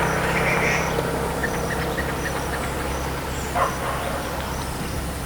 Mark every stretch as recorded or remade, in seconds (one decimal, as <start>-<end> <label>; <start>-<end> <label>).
0.0-5.3 recorded